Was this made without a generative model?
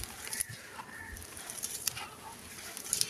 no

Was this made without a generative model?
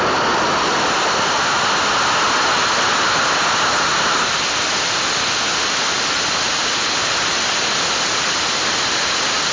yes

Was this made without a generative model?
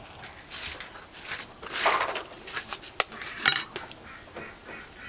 yes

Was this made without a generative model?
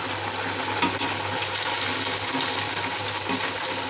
yes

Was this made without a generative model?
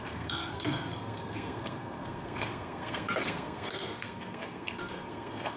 no